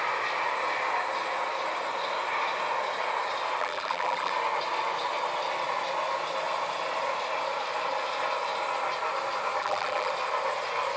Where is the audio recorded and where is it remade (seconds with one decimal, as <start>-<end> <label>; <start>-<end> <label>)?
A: 0.0-3.6 recorded; 3.6-4.3 remade; 4.3-9.6 recorded; 9.6-10.1 remade; 10.1-11.0 recorded